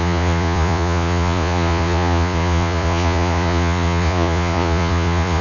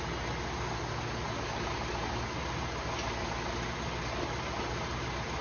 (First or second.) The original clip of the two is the second